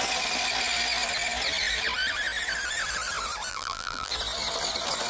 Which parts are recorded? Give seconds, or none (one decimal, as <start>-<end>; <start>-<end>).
0.0-3.5; 4.1-5.1